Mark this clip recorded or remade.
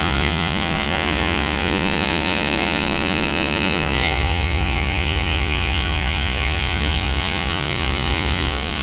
remade